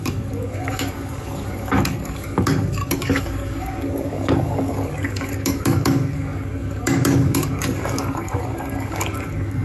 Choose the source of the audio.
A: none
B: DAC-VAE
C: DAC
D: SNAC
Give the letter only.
C